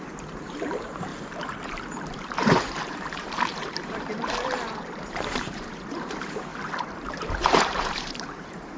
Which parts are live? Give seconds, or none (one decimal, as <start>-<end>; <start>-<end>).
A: 1.1-1.6; 6.5-7.0